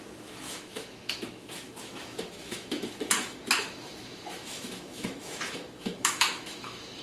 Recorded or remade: remade